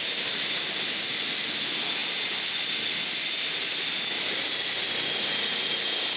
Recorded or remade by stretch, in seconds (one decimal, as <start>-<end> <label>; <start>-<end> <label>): 0.0-6.2 recorded